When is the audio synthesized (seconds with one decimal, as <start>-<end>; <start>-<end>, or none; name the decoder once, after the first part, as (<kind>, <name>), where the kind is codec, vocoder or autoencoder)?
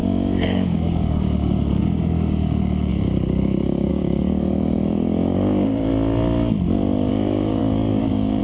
0.0-5.9 (codec, DAC); 7.1-8.4